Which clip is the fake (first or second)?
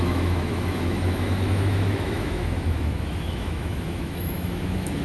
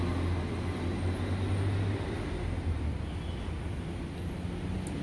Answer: first